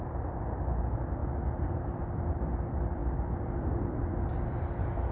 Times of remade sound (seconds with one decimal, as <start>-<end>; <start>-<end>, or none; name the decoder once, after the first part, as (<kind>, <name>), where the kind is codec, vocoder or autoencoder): none

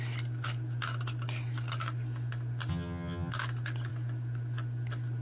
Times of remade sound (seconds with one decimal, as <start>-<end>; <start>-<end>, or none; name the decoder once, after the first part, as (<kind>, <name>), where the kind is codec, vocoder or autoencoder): 2.7-3.3 (vocoder, HiFi-GAN)

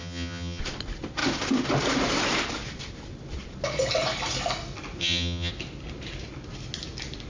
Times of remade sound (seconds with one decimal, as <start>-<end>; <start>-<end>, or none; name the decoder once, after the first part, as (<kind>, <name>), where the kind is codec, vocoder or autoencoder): 0.0-0.6 (vocoder, HiFi-GAN); 5.0-5.5

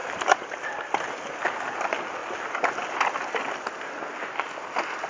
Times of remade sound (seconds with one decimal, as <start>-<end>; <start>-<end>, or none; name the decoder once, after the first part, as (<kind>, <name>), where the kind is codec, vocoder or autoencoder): none

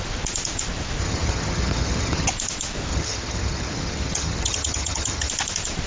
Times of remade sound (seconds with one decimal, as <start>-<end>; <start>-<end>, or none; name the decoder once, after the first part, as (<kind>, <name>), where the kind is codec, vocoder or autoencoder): 1.0-2.3 (vocoder, HiFi-GAN); 2.9-5.3

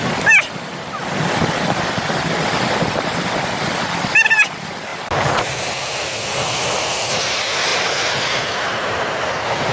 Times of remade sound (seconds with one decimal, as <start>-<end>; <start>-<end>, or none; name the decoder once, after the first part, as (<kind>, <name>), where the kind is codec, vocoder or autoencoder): none